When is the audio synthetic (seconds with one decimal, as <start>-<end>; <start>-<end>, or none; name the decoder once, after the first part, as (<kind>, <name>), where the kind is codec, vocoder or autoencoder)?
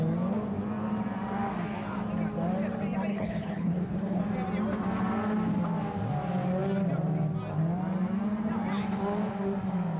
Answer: 3.1-4.2 (codec, HILCodec)